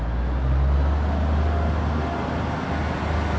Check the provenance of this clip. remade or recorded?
recorded